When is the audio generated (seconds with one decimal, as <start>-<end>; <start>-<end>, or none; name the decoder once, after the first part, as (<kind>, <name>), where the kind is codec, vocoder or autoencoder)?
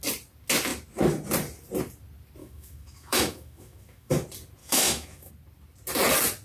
2.4-4.1 (autoencoder, DAC-VAE); 4.6-5.3